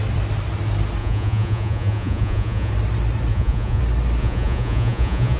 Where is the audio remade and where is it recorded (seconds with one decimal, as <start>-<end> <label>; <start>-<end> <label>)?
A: 0.0-1.0 recorded; 1.0-2.7 remade; 2.7-3.3 recorded; 3.3-3.8 remade; 3.8-4.2 recorded; 4.2-5.4 remade